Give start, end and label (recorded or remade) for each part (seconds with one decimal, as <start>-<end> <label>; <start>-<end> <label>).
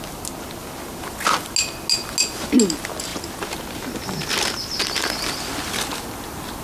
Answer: 0.0-0.6 recorded; 0.6-1.5 remade; 1.5-6.6 recorded